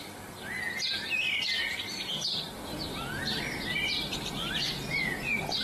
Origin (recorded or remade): remade